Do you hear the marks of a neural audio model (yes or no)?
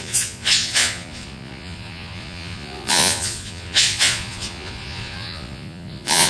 yes